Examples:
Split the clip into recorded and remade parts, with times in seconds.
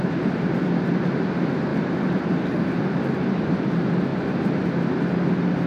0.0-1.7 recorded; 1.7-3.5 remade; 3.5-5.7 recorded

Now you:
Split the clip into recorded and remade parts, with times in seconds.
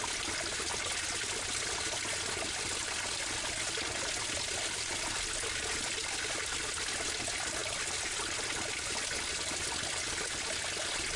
0.0-11.2 recorded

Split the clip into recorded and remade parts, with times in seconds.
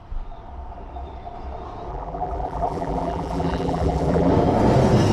0.0-1.9 recorded; 1.9-4.3 remade; 4.3-5.1 recorded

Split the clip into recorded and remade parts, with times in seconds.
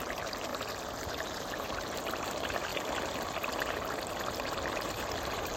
0.0-0.5 remade; 0.5-1.0 recorded; 1.0-2.7 remade; 2.7-4.7 recorded; 4.7-5.6 remade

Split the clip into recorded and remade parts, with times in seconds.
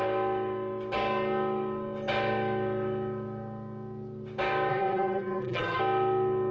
0.0-4.7 recorded; 4.7-5.8 remade; 5.8-6.5 recorded